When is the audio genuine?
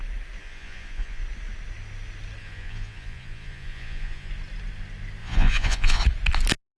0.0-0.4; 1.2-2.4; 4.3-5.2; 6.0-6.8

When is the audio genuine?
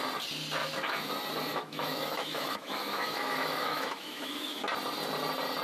0.0-0.6; 1.1-1.5; 4.6-5.6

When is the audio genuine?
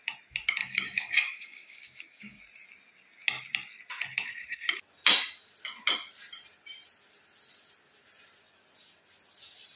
0.0-0.6; 2.4-9.8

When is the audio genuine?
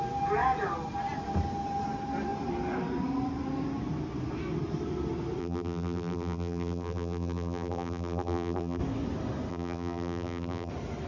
0.0-5.4; 8.8-9.5; 10.7-11.1